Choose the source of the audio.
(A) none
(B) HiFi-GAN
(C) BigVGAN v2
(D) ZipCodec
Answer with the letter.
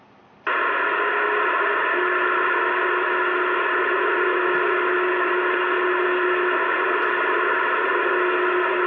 A